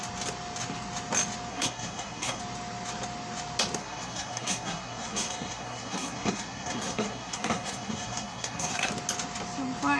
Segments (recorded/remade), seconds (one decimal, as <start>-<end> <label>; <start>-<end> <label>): 0.0-1.5 recorded; 1.5-2.4 remade; 2.4-3.8 recorded; 3.8-8.9 remade; 8.9-10.0 recorded